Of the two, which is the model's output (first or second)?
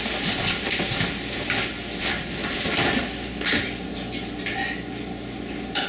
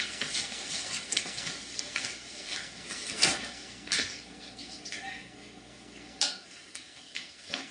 second